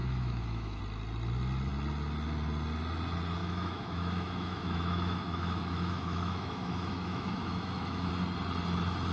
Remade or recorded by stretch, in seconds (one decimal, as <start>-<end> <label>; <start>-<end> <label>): 0.0-0.8 remade; 0.8-3.4 recorded; 3.4-8.1 remade; 8.1-9.1 recorded